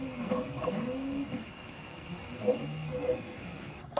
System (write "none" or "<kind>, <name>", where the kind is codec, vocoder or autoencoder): codec, SNAC